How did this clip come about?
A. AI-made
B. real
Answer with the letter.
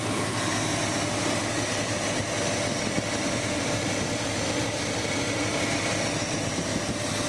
B